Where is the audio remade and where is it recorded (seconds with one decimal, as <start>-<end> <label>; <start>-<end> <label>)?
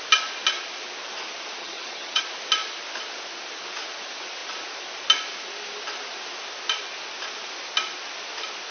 0.0-1.6 recorded; 1.6-2.2 remade; 2.2-8.7 recorded